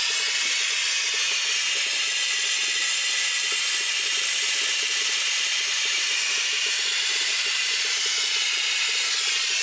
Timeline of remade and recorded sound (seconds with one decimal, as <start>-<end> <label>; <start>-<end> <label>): 0.0-3.8 recorded; 3.8-8.0 remade; 8.0-9.6 recorded